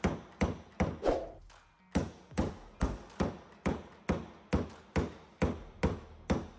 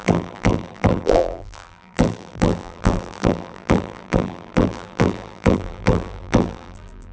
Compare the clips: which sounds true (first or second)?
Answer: first